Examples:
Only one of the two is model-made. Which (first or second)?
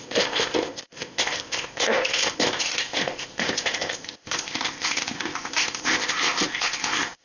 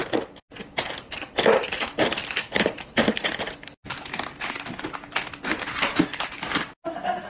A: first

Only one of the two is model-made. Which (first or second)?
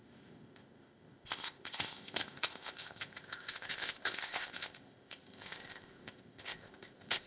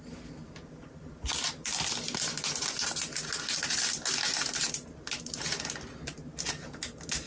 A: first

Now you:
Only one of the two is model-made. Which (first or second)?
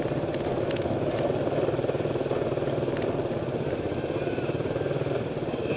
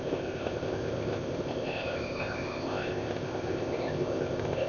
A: second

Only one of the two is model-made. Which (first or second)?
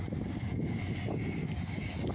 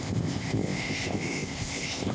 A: second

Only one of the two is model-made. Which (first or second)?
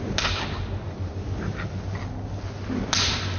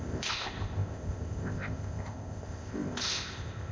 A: second